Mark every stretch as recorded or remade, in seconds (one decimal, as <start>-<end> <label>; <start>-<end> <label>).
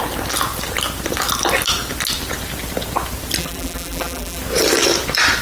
0.0-3.4 recorded; 3.4-4.4 remade; 4.4-5.4 recorded